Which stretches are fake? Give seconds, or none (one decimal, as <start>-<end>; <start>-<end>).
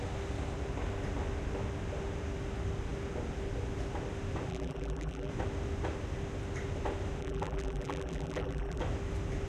4.5-5.3; 7.2-8.8